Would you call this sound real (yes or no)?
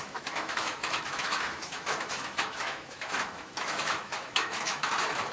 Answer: no